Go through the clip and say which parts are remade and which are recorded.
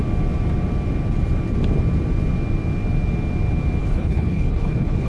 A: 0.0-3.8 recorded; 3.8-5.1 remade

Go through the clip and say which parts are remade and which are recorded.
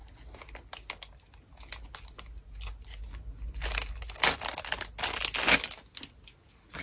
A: 0.0-6.8 recorded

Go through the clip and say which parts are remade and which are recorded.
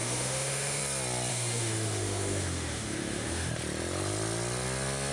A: 0.0-0.8 remade; 0.8-1.3 recorded; 1.3-3.5 remade; 3.5-5.1 recorded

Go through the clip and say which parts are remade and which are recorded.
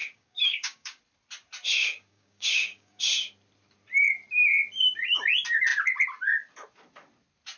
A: 0.0-1.0 remade; 1.0-1.8 recorded; 1.8-3.0 remade; 3.0-7.6 recorded